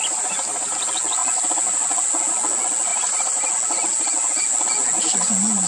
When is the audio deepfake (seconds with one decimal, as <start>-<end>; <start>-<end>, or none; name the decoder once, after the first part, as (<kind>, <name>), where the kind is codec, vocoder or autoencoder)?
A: 2.9-3.5 (vocoder, BigVGAN v2)